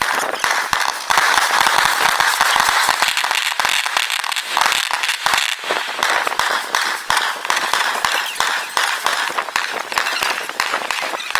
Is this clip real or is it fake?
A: real